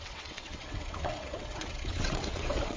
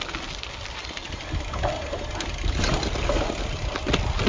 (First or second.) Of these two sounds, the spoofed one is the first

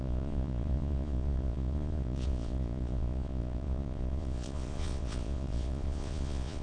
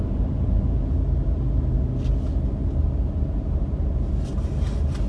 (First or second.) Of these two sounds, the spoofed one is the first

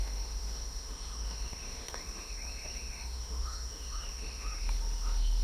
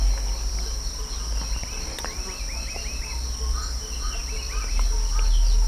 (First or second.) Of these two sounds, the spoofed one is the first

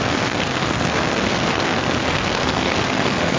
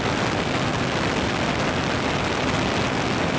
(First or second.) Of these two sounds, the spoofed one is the first